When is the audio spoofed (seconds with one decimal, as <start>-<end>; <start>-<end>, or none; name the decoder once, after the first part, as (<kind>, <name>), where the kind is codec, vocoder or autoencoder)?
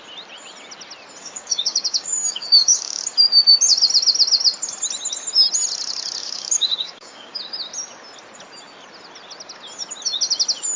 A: 1.2-3.0 (codec, DAC); 6.2-7.4